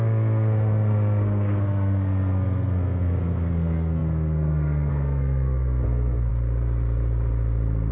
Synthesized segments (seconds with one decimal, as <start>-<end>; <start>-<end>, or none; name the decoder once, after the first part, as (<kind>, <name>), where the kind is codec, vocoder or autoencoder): 0.0-6.3 (codec, SNAC)